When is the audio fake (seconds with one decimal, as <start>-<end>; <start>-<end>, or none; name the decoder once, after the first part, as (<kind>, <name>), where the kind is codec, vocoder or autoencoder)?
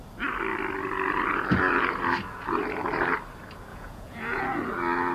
3.7-4.4 (vocoder, Vocos)